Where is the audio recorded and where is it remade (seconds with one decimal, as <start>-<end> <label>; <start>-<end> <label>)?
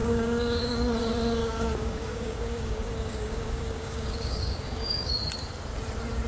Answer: 0.0-0.7 remade; 0.7-1.4 recorded; 1.4-5.1 remade; 5.1-6.3 recorded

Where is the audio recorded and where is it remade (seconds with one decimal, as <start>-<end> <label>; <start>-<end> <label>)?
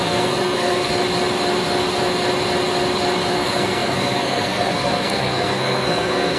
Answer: 0.0-0.9 remade; 0.9-3.3 recorded; 3.3-6.4 remade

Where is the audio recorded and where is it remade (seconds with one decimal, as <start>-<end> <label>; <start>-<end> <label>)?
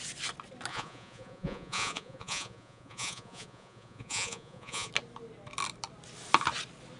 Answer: 0.0-0.7 recorded; 0.7-4.9 remade; 4.9-7.0 recorded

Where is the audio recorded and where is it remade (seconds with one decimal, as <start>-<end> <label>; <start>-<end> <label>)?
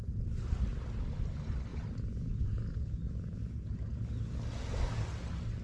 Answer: 0.0-1.7 recorded; 1.7-3.7 remade; 3.7-5.6 recorded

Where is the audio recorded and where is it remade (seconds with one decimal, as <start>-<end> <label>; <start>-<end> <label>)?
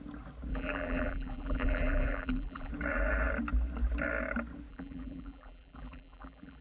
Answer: 0.0-0.5 recorded; 0.5-2.7 remade; 2.7-4.7 recorded; 4.7-6.6 remade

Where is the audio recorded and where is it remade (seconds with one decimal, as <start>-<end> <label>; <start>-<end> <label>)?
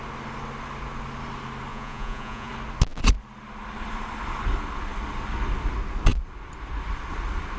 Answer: 0.0-1.7 recorded; 1.7-2.5 remade; 2.5-7.6 recorded